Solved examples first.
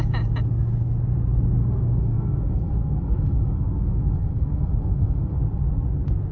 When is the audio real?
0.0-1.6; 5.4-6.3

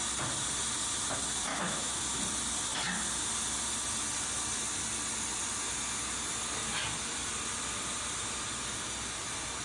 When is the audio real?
0.0-1.5; 2.2-9.6

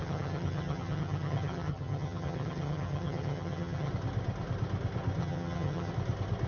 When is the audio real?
3.9-5.2; 5.9-6.5

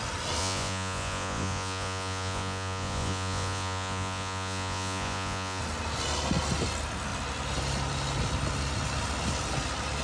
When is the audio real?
0.0-0.4; 5.6-10.0